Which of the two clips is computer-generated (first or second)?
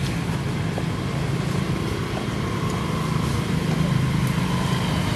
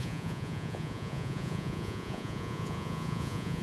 second